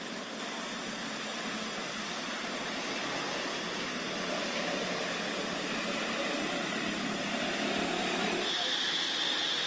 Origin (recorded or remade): remade